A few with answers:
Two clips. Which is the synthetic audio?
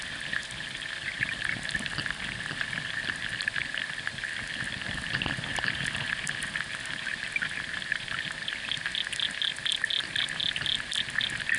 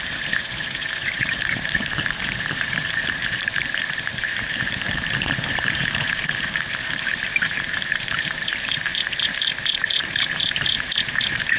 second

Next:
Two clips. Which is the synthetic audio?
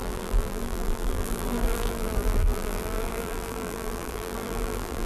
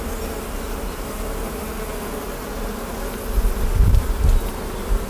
first